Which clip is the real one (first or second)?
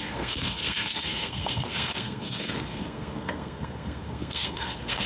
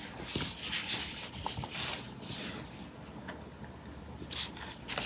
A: second